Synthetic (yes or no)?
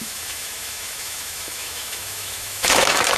yes